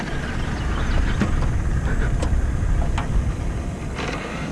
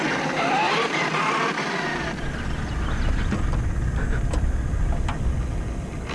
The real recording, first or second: second